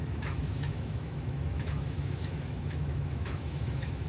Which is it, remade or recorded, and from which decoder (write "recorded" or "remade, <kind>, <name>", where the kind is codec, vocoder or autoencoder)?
remade, autoencoder, DAC-VAE